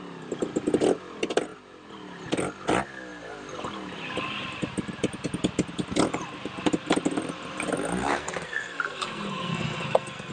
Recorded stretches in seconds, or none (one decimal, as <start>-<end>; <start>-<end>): 0.0-8.0